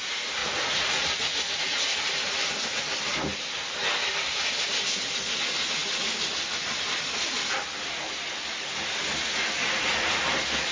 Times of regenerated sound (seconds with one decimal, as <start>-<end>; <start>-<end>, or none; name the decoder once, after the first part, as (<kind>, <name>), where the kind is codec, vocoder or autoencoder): 0.4-1.9 (vocoder, Vocos); 9.6-10.2